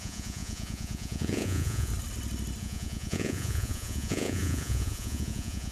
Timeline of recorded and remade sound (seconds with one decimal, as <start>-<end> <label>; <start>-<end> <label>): 0.0-1.9 remade; 1.9-2.6 recorded; 2.6-5.7 remade

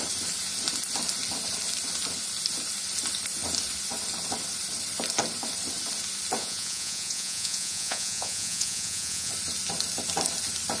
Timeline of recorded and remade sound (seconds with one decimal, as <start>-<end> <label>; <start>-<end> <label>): 0.0-6.4 recorded; 6.4-9.3 remade; 9.3-10.8 recorded